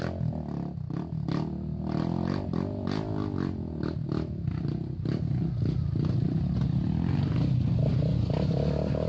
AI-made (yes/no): no